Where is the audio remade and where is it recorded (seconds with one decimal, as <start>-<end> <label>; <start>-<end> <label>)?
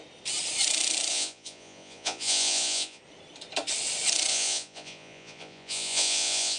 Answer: 0.0-1.1 recorded; 1.1-3.0 remade; 3.0-4.3 recorded; 4.3-6.6 remade